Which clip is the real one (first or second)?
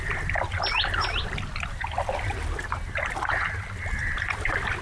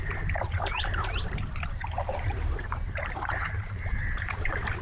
first